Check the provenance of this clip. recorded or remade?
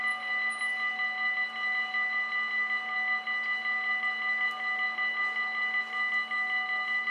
recorded